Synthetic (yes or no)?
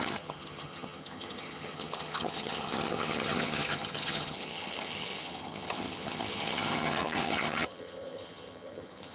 yes